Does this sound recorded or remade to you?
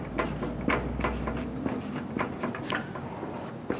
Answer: recorded